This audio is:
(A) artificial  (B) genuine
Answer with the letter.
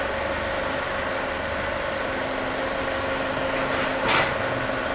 B